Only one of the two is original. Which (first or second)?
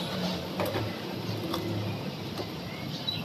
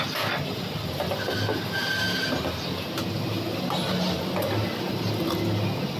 second